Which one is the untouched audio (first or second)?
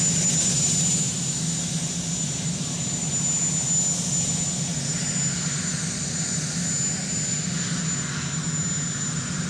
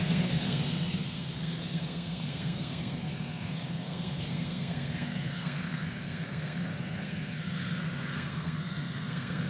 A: first